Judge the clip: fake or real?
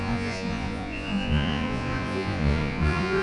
fake